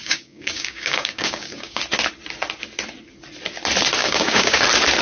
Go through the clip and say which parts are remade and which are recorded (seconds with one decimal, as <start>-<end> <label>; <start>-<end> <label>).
0.0-1.8 remade; 1.8-4.0 recorded; 4.0-4.6 remade; 4.6-5.0 recorded